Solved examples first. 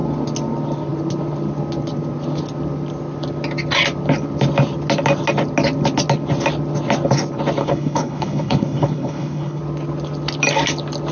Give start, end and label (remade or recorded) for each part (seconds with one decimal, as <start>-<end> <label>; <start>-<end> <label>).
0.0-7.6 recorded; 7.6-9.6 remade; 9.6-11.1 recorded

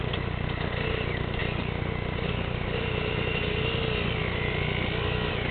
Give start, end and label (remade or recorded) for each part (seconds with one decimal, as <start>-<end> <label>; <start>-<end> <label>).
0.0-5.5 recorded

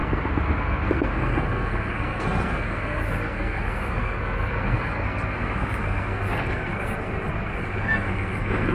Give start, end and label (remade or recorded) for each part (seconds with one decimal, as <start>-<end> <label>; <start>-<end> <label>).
0.0-8.7 remade